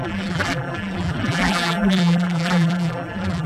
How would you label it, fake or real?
fake